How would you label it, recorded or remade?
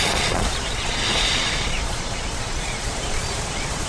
remade